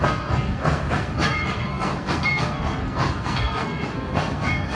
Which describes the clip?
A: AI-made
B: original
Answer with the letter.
A